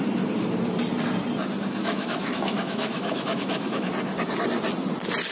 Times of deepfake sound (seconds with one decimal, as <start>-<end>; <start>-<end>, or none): 1.8-3.9